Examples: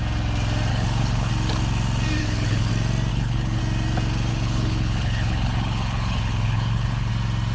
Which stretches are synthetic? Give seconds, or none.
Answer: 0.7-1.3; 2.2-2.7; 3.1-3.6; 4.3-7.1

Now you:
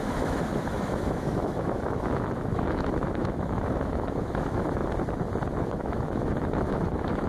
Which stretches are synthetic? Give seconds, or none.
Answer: 0.0-4.8; 5.6-7.3